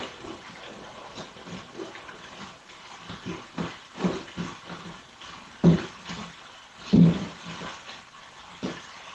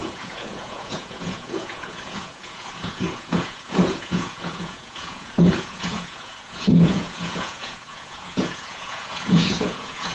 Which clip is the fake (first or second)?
second